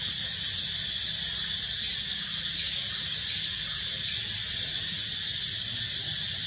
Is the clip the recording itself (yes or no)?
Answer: yes